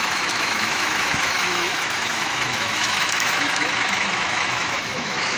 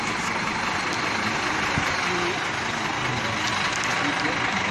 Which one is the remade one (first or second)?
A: first